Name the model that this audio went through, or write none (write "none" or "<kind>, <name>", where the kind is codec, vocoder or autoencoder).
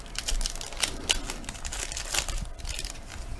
none